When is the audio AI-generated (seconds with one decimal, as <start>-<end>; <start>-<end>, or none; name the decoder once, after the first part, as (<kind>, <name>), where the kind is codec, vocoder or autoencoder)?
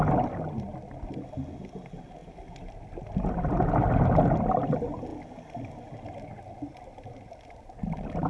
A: none